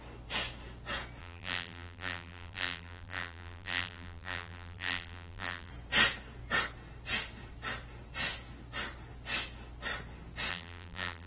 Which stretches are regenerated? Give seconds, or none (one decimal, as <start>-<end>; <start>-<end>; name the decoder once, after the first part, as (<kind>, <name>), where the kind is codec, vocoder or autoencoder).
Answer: 1.2-5.7 (vocoder, BigVGAN v2); 10.5-11.3